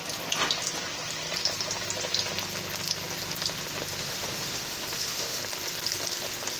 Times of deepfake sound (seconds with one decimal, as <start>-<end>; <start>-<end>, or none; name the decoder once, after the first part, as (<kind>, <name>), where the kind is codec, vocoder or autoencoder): 4.0-5.4 (autoencoder, DAC-VAE)